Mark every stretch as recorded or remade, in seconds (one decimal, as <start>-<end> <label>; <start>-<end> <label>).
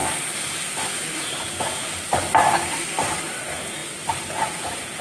0.0-1.2 recorded; 1.2-1.8 remade; 1.8-3.4 recorded; 3.4-3.8 remade; 3.8-4.3 recorded; 4.3-5.0 remade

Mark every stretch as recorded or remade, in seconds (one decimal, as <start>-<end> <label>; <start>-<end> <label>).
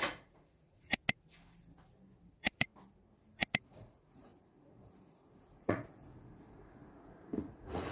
0.0-1.0 remade; 1.0-2.2 recorded; 2.2-2.7 remade; 2.7-3.7 recorded; 3.7-7.9 remade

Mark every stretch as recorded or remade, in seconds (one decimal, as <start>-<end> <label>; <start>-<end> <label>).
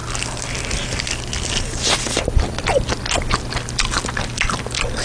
0.0-5.0 recorded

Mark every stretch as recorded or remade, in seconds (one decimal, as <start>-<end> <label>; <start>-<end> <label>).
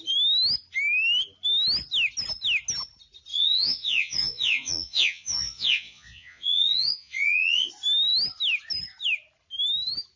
0.0-3.3 recorded; 3.3-7.7 remade; 7.7-10.2 recorded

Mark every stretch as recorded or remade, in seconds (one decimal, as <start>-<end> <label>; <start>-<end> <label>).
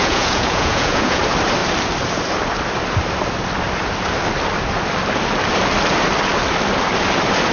0.0-1.2 remade; 1.2-7.5 recorded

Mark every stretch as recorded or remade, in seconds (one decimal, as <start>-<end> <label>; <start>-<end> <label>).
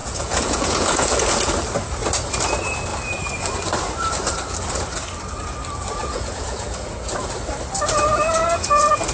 0.0-1.5 remade; 1.5-6.0 recorded; 6.0-7.2 remade; 7.2-9.1 recorded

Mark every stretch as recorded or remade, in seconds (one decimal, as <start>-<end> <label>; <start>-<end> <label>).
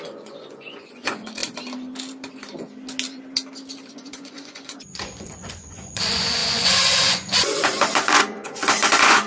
0.0-1.4 remade; 1.4-3.9 recorded; 3.9-9.3 remade